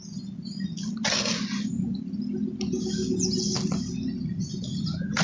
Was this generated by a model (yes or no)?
no